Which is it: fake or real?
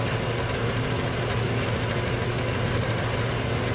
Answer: real